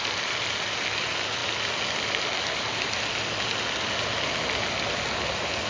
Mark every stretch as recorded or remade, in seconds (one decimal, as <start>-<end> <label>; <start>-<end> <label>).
0.0-5.7 recorded